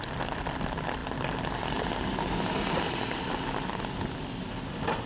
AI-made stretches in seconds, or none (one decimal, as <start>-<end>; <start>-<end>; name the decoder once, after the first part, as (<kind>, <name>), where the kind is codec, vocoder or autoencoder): none